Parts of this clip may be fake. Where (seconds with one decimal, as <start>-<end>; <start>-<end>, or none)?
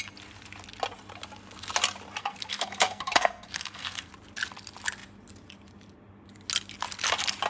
2.2-4.1